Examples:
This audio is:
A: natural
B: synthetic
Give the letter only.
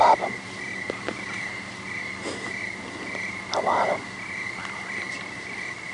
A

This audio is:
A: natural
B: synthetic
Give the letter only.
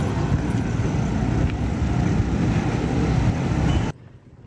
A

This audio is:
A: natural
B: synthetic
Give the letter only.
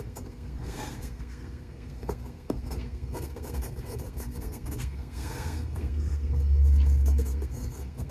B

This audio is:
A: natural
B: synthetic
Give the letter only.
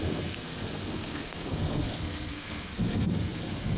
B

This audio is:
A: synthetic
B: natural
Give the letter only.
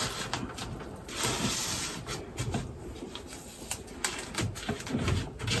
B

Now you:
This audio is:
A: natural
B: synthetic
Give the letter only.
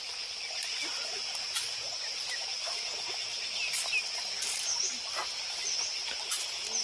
A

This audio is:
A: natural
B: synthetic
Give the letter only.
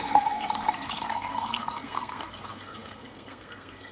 B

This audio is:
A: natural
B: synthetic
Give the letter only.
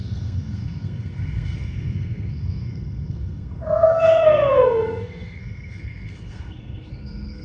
B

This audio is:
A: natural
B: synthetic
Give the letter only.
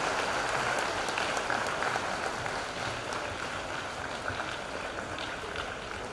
A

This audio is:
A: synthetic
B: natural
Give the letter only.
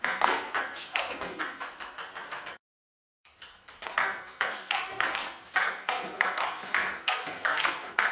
A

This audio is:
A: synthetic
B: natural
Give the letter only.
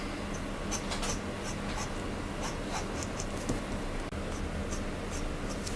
B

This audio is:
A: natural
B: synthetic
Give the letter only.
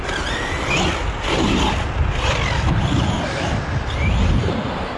A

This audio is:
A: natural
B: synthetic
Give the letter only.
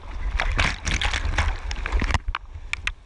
A